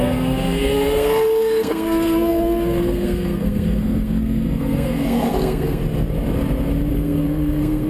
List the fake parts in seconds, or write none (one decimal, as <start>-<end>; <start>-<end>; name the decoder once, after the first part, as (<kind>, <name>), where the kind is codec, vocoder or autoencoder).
0.0-5.8 (codec, SNAC); 6.9-7.9